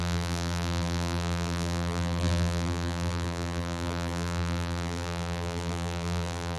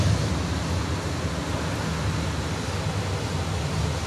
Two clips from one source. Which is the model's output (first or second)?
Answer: first